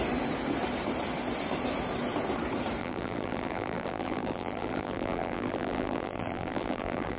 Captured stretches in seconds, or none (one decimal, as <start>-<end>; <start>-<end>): 0.0-2.8